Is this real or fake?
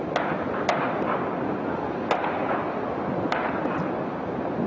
real